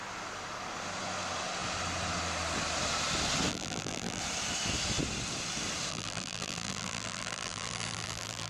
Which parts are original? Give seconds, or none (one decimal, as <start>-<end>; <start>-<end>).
0.0-3.5; 4.2-5.9